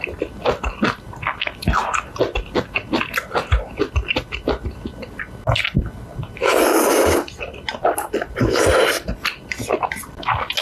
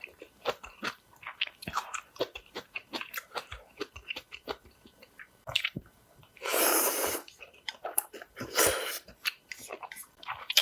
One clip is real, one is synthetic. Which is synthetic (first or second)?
second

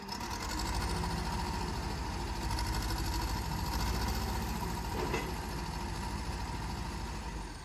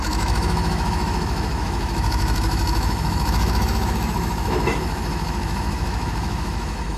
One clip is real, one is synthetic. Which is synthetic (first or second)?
second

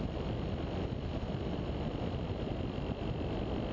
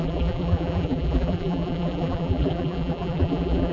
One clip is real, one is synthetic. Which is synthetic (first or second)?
second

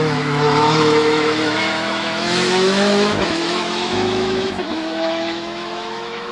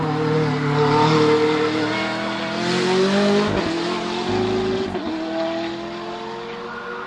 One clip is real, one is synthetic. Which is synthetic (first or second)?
first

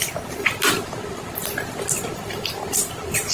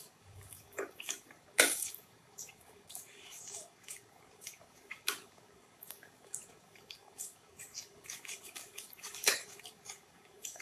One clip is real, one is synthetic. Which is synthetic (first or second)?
second